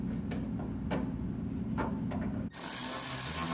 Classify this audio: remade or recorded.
recorded